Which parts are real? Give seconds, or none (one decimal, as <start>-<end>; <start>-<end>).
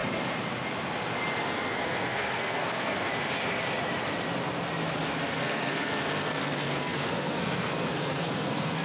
0.0-1.5; 3.1-5.2